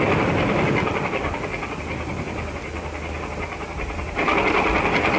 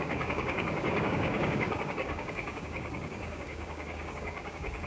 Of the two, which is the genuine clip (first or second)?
first